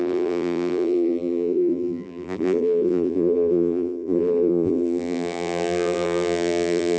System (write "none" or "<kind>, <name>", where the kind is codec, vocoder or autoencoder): vocoder, BigVGAN v2